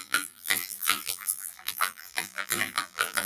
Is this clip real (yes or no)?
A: no